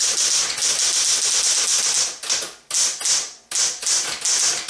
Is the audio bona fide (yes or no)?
yes